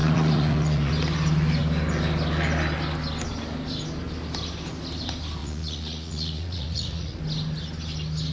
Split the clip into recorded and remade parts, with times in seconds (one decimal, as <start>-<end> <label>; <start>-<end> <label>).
0.0-0.9 remade; 0.9-5.4 recorded; 5.4-7.2 remade; 7.2-8.3 recorded